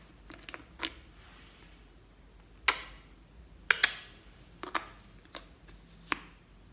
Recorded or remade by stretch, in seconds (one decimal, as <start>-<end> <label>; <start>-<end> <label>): 0.0-6.7 recorded